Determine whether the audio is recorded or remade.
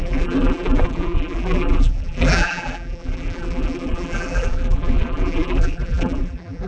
remade